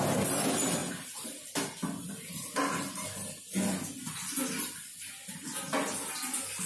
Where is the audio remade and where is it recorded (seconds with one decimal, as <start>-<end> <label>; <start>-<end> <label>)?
0.0-6.7 recorded